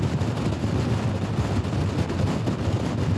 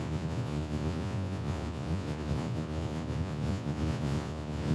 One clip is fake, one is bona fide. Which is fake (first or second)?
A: second